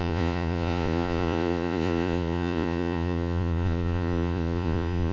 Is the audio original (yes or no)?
no